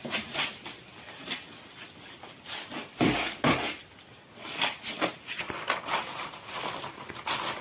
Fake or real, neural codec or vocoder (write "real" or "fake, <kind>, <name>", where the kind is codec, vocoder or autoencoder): real